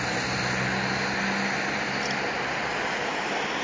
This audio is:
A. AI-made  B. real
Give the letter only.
B